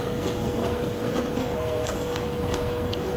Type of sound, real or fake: fake